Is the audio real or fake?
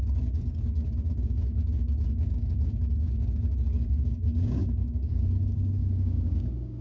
fake